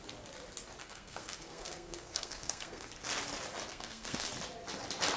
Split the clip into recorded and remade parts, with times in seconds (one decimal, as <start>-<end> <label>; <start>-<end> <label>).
0.0-0.8 recorded; 0.8-2.9 remade; 2.9-3.7 recorded; 3.7-4.3 remade; 4.3-5.2 recorded